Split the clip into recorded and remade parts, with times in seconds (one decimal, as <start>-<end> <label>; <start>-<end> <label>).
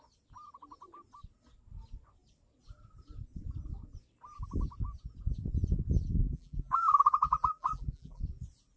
0.0-6.2 recorded; 6.2-8.2 remade; 8.2-8.8 recorded